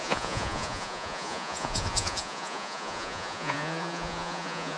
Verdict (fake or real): fake